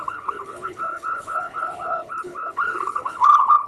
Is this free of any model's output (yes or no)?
no